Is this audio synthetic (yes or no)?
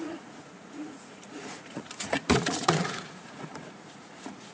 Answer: yes